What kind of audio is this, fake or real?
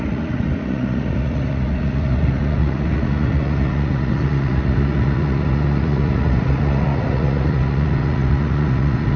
fake